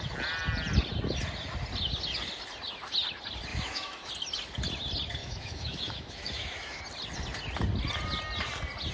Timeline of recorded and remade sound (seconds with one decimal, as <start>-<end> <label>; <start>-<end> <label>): 0.0-3.5 recorded; 3.5-4.1 remade; 4.1-5.2 recorded; 5.2-6.8 remade; 6.8-8.9 recorded